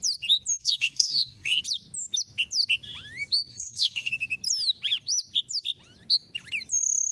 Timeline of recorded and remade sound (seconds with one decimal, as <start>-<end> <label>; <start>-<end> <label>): 0.0-0.6 recorded; 0.6-1.6 remade; 1.6-3.5 recorded; 3.5-4.1 remade; 4.1-7.1 recorded